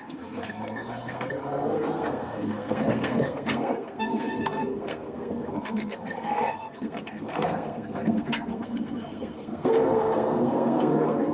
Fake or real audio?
fake